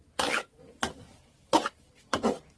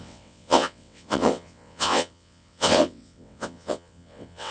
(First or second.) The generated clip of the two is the second